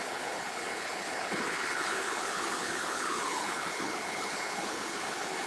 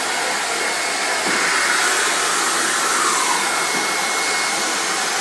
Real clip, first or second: second